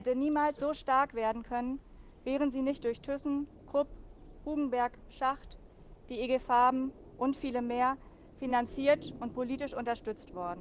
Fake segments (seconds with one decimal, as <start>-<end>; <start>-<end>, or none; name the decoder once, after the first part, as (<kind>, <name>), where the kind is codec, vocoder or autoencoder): none

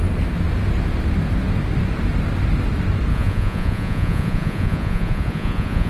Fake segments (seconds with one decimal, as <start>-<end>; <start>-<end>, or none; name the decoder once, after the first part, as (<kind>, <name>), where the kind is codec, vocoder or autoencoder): 3.1-5.9 (vocoder, Vocos)